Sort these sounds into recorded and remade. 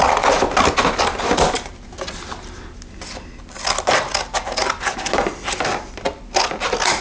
recorded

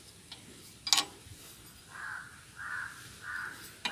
recorded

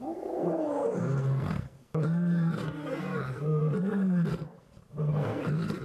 remade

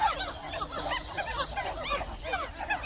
recorded